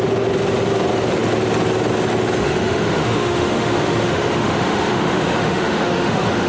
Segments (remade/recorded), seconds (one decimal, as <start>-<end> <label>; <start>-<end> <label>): 0.0-2.4 recorded; 2.4-6.5 remade